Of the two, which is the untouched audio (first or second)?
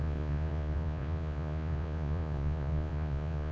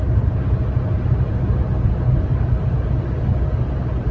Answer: second